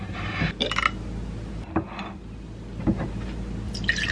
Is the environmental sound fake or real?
real